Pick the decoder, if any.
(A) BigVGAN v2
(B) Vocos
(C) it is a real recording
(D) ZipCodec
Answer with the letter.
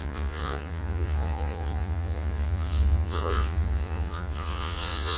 B